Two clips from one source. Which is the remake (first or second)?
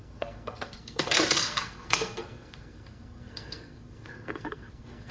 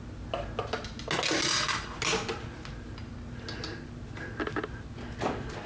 first